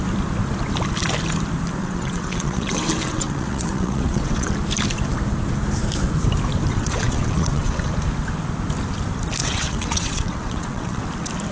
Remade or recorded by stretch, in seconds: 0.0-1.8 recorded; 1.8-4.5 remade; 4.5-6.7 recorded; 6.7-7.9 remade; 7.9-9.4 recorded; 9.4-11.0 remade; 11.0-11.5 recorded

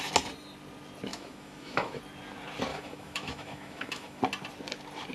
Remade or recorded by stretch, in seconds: 0.0-1.1 recorded; 1.1-2.0 remade; 2.0-2.7 recorded; 2.7-4.2 remade; 4.2-5.1 recorded

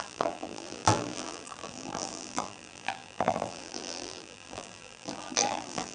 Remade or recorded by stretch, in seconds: 0.0-5.9 remade